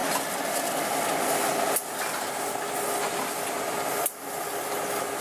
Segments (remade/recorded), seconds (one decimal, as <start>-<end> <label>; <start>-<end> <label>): 0.0-5.2 recorded